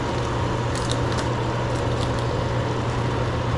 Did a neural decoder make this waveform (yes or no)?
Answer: no